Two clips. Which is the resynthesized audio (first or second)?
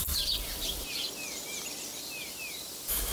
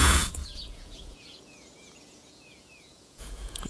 second